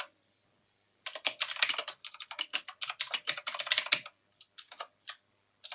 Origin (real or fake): real